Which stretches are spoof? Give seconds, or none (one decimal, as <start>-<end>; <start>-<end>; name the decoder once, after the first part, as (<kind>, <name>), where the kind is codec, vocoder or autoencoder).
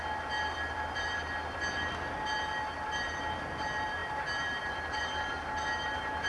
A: none